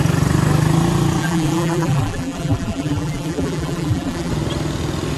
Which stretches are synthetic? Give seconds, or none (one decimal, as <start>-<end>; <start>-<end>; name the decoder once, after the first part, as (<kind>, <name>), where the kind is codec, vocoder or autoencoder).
1.2-4.3 (vocoder, BigVGAN v2)